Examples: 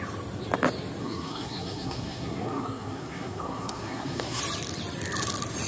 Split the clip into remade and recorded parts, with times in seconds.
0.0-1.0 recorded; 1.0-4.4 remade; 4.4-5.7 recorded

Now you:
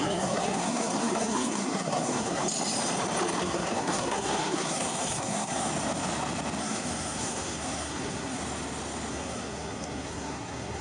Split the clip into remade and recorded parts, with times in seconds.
0.0-2.4 remade; 2.4-3.4 recorded; 3.4-5.7 remade; 5.7-6.6 recorded; 6.6-8.4 remade; 8.4-9.1 recorded; 9.1-10.8 remade

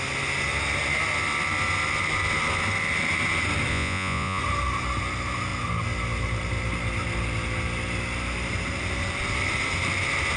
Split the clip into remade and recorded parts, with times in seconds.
0.0-3.7 recorded; 3.7-4.4 remade; 4.4-10.4 recorded

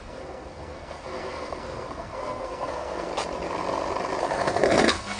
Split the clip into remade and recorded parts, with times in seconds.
0.0-3.1 remade; 3.1-4.2 recorded; 4.2-5.2 remade

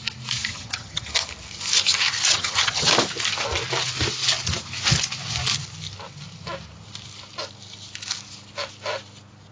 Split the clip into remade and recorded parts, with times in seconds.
0.0-0.5 recorded; 0.5-1.1 remade; 1.1-2.3 recorded; 2.3-2.9 remade; 2.9-9.5 recorded

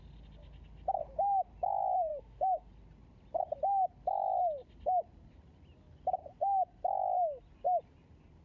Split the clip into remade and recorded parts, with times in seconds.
0.0-2.1 recorded; 2.1-2.7 remade; 2.7-8.4 recorded

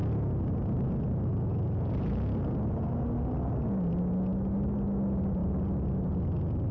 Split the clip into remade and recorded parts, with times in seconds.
0.0-6.7 recorded

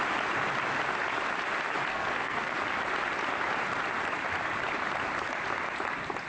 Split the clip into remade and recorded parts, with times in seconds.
0.0-1.9 recorded; 1.9-2.5 remade; 2.5-6.3 recorded